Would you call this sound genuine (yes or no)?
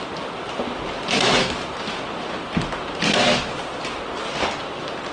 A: yes